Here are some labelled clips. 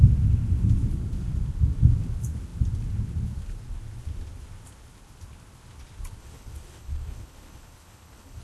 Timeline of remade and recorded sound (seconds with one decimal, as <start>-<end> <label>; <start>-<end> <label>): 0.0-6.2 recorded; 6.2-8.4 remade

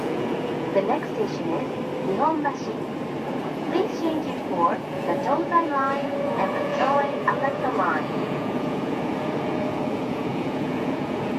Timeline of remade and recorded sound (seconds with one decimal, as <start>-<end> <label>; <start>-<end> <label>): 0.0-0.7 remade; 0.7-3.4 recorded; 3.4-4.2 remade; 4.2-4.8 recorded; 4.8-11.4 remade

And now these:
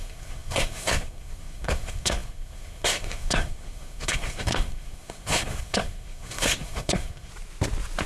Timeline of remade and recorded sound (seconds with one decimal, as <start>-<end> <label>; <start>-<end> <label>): 0.0-7.3 remade; 7.3-8.1 recorded

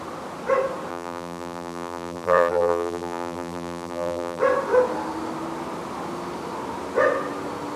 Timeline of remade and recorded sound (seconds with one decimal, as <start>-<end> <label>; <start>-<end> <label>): 0.0-0.9 recorded; 0.9-4.4 remade; 4.4-7.8 recorded

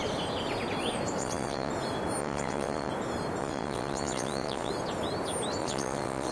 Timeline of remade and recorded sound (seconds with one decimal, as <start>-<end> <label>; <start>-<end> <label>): 0.0-1.2 recorded; 1.2-1.7 remade; 1.7-2.2 recorded; 2.2-2.9 remade; 2.9-3.4 recorded; 3.4-4.7 remade; 4.7-5.6 recorded; 5.6-6.3 remade